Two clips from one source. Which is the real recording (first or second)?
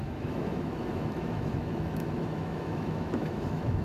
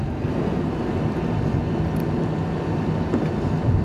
second